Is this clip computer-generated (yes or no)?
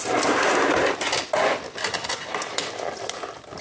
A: no